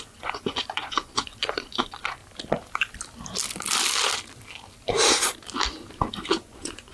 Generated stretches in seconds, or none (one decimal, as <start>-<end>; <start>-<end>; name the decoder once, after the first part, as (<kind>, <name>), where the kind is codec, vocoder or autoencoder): 0.0-2.2 (vocoder, Vocos); 6.3-6.9